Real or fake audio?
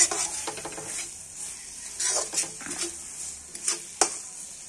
real